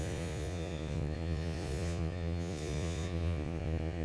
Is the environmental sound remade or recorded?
remade